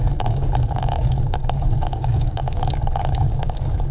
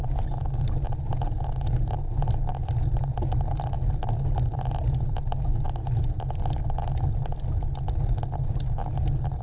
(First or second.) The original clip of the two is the second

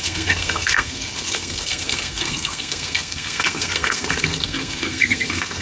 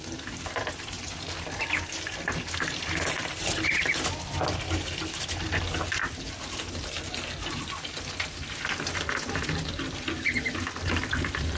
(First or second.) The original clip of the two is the second